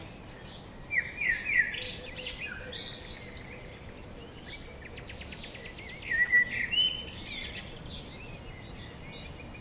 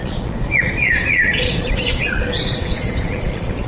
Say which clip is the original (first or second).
first